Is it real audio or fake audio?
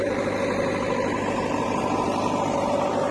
real